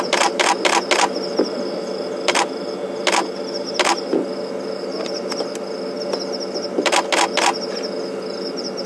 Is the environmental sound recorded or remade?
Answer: recorded